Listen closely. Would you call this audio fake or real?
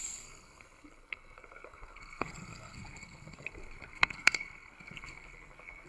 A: fake